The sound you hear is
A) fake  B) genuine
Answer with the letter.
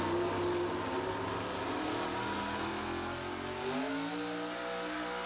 B